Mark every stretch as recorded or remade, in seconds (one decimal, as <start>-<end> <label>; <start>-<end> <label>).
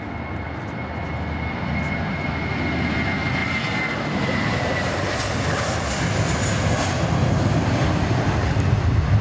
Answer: 0.0-9.2 recorded